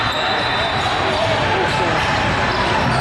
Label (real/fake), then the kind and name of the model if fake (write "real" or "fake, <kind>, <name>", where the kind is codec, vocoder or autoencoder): real